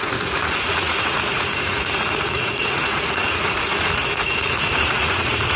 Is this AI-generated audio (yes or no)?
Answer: yes